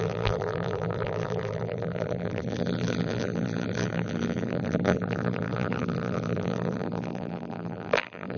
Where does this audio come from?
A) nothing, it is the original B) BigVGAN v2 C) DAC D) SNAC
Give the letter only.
B